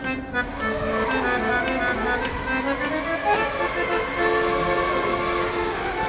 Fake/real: real